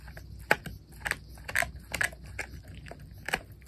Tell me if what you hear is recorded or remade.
recorded